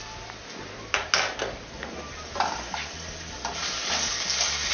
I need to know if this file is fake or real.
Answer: real